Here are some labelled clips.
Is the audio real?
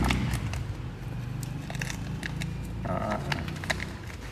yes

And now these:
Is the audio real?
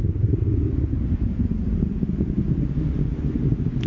yes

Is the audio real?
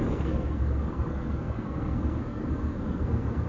no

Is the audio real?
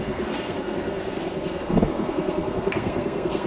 no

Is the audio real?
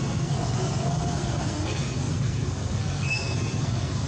no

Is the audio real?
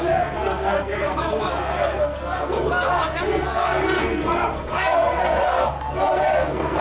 no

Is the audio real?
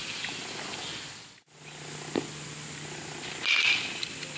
yes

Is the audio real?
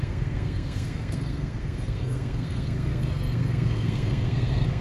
no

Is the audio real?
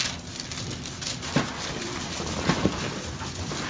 yes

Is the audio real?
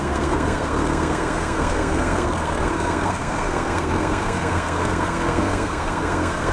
no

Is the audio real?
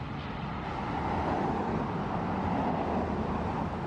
yes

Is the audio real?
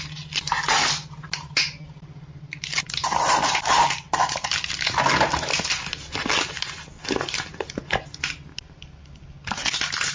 yes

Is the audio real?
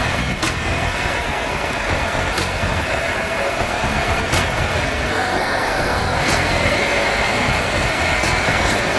no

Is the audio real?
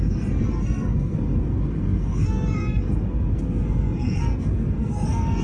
no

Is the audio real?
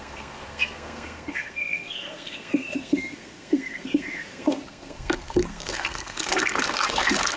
no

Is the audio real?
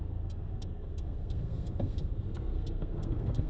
no